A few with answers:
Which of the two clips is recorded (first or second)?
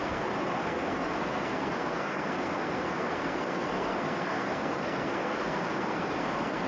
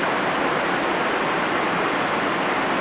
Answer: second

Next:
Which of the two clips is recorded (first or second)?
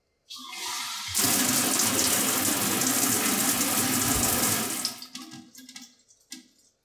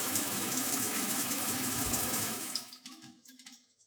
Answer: first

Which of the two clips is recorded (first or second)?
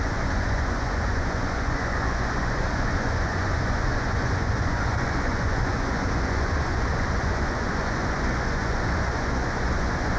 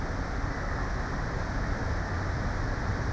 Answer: second